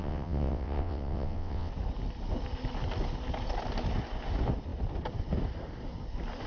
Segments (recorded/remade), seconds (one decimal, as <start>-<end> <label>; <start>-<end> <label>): 0.0-1.7 remade; 1.7-6.5 recorded